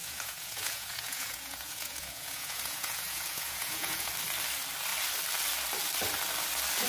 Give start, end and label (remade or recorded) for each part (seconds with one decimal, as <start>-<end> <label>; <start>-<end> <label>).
0.0-4.1 remade; 4.1-6.9 recorded